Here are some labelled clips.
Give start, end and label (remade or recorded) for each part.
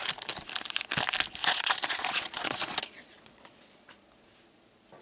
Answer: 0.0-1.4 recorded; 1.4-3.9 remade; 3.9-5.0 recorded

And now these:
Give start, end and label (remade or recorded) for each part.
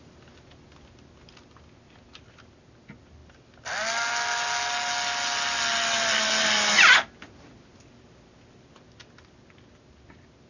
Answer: 0.0-10.5 recorded